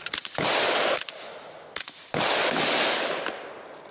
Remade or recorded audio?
recorded